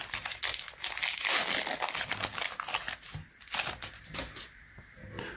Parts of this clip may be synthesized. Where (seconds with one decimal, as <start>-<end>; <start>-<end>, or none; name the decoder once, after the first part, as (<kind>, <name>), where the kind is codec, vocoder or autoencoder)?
none